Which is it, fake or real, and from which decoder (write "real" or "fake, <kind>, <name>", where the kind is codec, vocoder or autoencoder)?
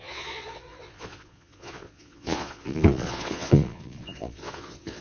fake, vocoder, Vocos